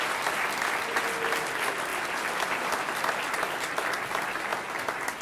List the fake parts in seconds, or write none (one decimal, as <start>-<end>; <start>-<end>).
none